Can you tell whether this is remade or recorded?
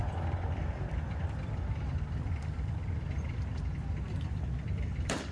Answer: remade